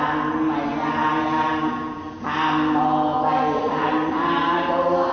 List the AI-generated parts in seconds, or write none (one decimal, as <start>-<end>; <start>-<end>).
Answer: none